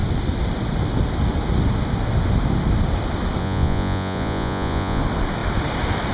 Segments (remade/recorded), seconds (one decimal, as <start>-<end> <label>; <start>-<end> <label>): 0.0-3.4 recorded; 3.4-5.0 remade; 5.0-6.1 recorded

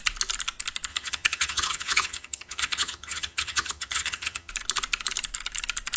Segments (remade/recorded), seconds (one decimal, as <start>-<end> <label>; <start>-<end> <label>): 0.0-0.9 recorded; 0.9-4.5 remade; 4.5-6.0 recorded